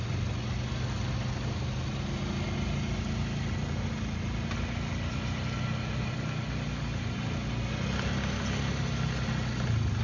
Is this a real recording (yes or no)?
yes